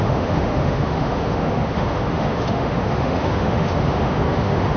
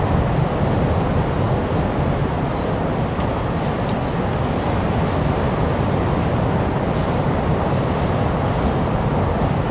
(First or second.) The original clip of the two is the second